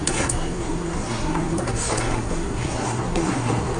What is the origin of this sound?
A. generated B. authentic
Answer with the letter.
A